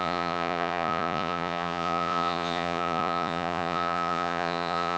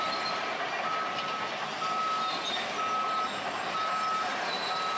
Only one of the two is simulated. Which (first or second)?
first